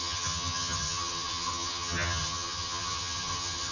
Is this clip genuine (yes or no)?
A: no